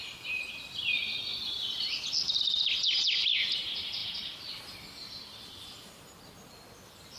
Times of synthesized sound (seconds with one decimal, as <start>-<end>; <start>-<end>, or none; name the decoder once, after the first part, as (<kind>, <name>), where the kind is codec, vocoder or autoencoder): none